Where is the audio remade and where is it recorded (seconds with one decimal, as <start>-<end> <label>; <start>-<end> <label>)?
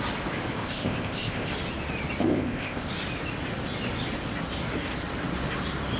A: 0.0-0.5 recorded; 0.5-1.5 remade; 1.5-2.2 recorded; 2.2-2.9 remade; 2.9-6.0 recorded